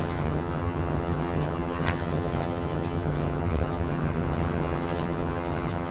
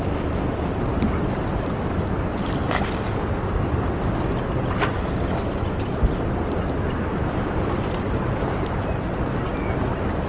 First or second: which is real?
second